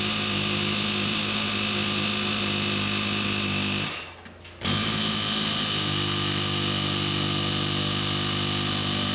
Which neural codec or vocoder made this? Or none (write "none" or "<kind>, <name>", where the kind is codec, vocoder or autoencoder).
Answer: none